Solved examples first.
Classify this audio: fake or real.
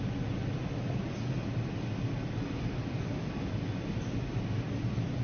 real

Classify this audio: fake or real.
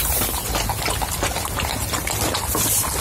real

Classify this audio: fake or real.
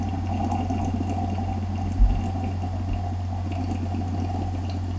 real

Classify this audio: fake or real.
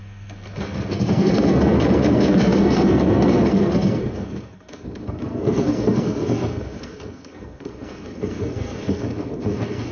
fake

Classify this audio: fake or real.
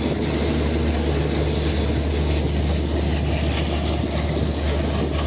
real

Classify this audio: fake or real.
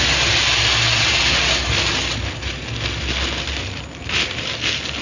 real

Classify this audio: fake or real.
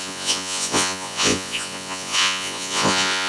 fake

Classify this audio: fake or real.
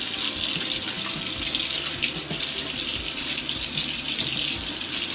real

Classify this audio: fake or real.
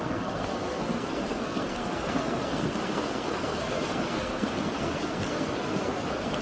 fake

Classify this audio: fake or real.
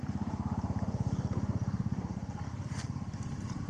real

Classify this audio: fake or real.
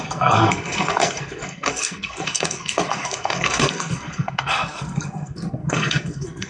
fake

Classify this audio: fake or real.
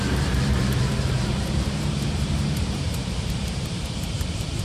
fake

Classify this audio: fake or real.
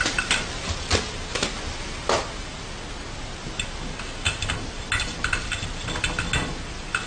real